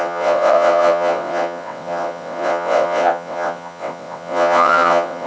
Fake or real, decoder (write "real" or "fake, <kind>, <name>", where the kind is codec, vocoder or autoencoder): fake, vocoder, WaveNeXt